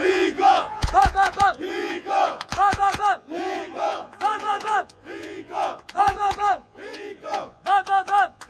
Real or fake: fake